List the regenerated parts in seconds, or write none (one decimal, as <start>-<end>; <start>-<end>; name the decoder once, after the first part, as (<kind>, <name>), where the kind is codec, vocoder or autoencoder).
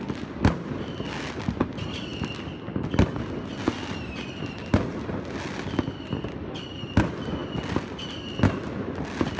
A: none